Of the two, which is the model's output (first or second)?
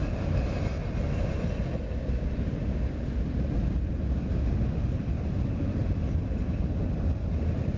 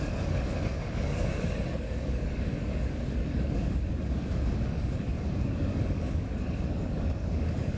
second